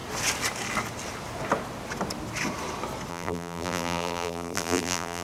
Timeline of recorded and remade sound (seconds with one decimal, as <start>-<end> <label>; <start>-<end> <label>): 0.0-3.1 recorded; 3.1-5.2 remade